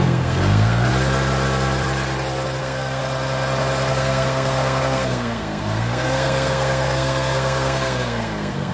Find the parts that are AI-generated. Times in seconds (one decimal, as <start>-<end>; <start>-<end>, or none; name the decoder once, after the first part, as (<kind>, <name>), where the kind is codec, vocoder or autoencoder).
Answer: 0.0-0.9 (codec, SNAC); 2.6-3.0; 3.9-8.7